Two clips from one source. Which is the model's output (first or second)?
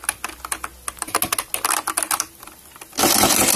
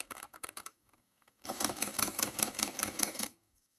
second